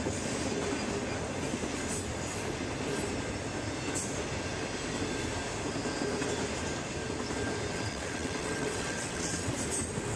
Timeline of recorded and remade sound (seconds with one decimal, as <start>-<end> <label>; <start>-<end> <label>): 0.0-7.7 recorded; 7.7-9.5 remade; 9.5-10.2 recorded